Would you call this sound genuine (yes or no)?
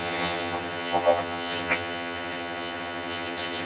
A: no